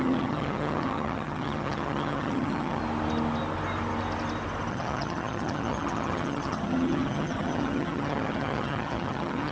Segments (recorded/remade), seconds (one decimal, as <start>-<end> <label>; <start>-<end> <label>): 0.0-2.8 remade; 2.8-4.7 recorded; 4.7-9.5 remade